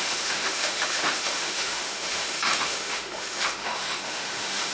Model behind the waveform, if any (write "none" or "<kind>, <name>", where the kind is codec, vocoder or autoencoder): autoencoder, DAC-VAE